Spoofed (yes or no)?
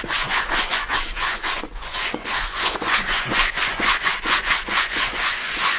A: yes